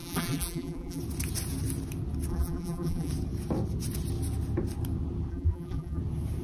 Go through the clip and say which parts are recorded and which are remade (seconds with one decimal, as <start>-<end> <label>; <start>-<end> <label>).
0.0-1.0 remade; 1.0-2.3 recorded; 2.3-3.1 remade; 3.1-5.3 recorded; 5.3-6.0 remade; 6.0-6.4 recorded